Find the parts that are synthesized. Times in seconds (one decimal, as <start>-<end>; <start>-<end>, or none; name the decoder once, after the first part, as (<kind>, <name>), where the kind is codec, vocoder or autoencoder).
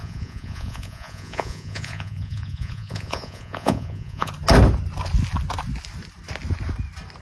0.0-4.3 (vocoder, Vocos)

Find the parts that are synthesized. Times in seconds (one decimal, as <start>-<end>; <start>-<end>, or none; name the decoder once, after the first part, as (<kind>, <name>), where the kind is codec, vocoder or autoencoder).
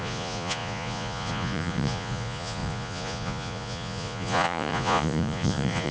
0.0-5.9 (vocoder, Vocos)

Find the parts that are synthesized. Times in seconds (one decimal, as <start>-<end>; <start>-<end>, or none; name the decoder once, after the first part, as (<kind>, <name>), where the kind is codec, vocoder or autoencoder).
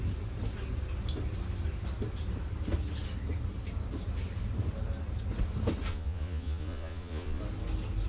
5.9-7.4 (vocoder, Vocos)